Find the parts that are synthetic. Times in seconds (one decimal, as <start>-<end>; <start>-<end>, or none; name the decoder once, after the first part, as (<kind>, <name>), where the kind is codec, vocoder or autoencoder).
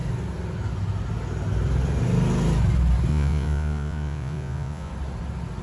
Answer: 3.1-4.9 (vocoder, Vocos)